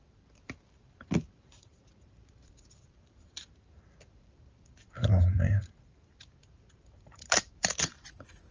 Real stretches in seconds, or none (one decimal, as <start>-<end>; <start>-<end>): none